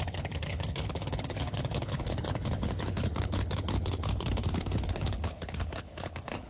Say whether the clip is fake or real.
fake